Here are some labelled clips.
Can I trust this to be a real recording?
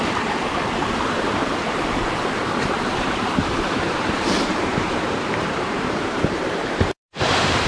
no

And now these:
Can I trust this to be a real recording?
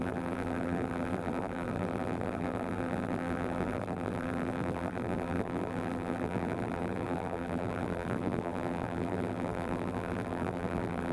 no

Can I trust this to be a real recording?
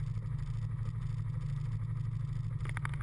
yes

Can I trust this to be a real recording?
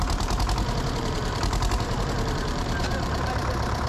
no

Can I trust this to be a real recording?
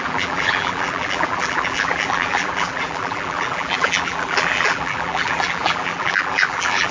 no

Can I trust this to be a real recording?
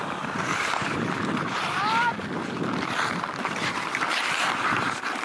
no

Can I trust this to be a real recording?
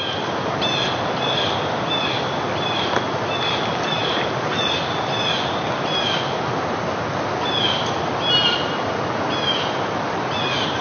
yes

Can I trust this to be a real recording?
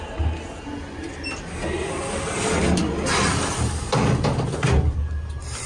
yes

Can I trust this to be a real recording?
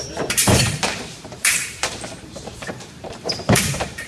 no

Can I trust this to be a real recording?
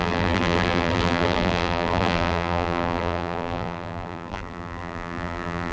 no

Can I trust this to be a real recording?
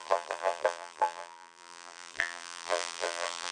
no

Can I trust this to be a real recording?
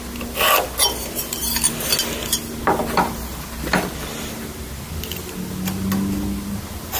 yes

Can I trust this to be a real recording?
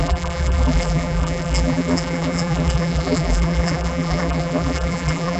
no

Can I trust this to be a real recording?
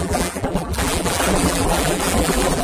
no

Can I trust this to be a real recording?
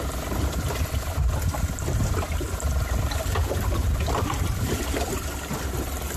no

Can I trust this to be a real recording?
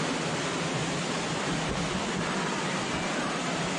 yes